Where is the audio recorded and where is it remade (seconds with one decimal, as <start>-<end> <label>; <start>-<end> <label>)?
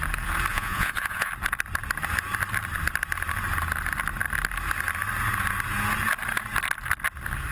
0.0-0.5 recorded; 0.5-1.3 remade; 1.3-7.5 recorded